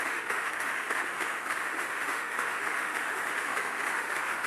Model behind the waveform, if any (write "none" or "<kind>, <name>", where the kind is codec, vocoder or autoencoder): autoencoder, DAC-VAE